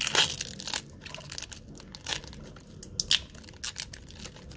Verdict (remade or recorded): recorded